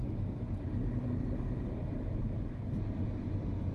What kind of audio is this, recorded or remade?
recorded